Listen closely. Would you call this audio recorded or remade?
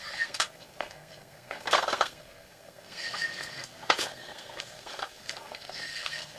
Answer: remade